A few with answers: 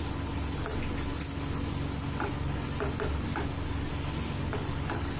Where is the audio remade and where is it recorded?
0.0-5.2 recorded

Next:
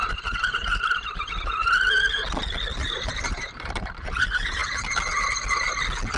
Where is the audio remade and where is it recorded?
0.0-1.6 remade; 1.6-2.8 recorded; 2.8-4.6 remade; 4.6-6.2 recorded

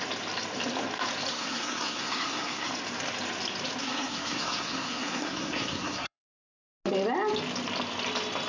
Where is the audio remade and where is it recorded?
0.0-1.3 recorded; 1.3-2.7 remade; 2.7-3.8 recorded; 3.8-6.3 remade; 6.3-8.5 recorded

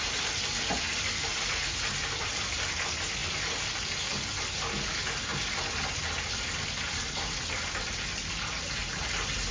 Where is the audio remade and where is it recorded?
0.0-9.5 recorded

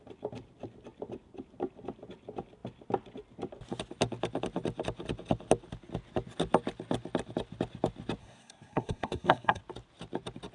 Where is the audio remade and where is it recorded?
0.0-8.2 recorded; 8.2-9.6 remade; 9.6-10.5 recorded

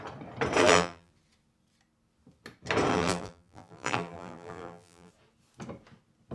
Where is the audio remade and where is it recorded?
0.0-0.6 recorded; 0.6-1.1 remade; 1.1-2.9 recorded; 2.9-5.1 remade; 5.1-6.3 recorded